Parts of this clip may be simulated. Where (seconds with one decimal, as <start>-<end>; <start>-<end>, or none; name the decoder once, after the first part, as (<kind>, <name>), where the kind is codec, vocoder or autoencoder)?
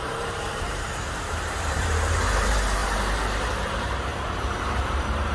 0.0-5.3 (vocoder, BigVGAN v2)